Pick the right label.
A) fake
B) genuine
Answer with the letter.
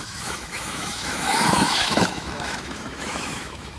A